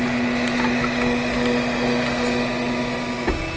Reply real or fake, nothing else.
real